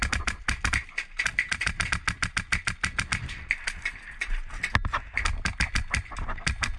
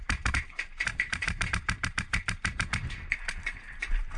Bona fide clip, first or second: first